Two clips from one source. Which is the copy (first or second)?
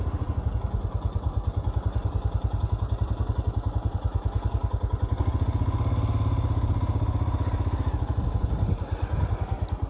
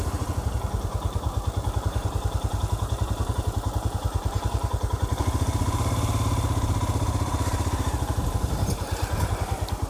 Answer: second